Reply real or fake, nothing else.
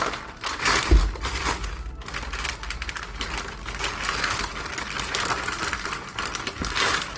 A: real